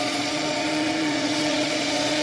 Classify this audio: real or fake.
fake